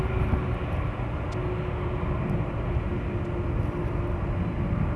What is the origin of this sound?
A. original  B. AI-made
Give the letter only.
A